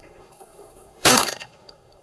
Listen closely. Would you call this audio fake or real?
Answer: fake